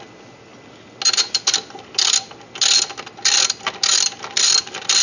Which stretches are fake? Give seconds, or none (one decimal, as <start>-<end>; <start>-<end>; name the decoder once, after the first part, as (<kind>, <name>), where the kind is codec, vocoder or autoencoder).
none